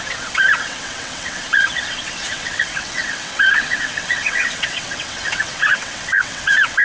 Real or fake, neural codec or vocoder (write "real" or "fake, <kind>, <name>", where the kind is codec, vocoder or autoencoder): fake, vocoder, WaveNeXt